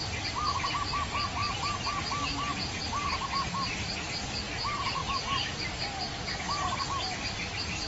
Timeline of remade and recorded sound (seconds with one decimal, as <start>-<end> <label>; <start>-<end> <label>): 0.0-7.9 recorded